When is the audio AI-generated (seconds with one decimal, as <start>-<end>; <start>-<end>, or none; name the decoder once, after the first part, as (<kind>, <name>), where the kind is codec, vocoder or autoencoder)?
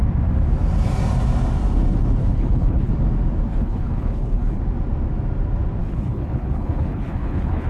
2.2-2.9 (codec, HILCodec); 3.5-4.6; 5.8-7.7